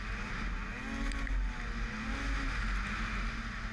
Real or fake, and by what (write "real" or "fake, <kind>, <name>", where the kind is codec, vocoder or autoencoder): real